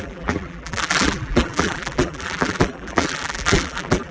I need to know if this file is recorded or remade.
remade